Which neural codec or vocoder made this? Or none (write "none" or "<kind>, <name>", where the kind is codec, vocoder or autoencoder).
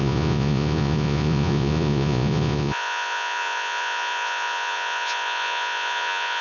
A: vocoder, Vocos